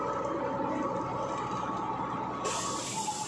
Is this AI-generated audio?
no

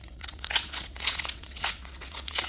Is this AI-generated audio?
yes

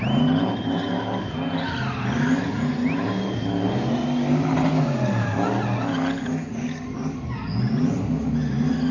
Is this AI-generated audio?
no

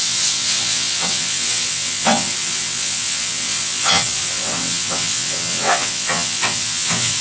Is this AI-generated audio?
yes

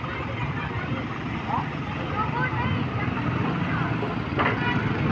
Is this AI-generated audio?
no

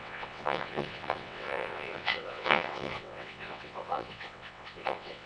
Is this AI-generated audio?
yes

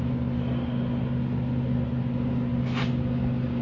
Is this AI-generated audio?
no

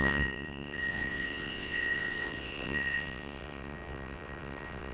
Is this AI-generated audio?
yes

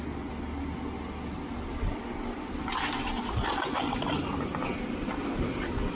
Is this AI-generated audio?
no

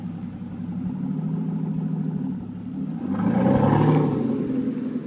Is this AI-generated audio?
no